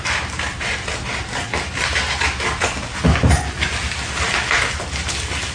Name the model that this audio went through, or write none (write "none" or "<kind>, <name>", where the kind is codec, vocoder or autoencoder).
none